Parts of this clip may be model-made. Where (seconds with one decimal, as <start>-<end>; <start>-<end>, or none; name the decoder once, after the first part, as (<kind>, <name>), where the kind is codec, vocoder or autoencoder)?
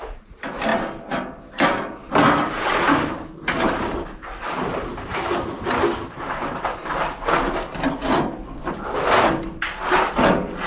none